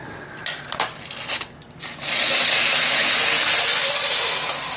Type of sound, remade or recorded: recorded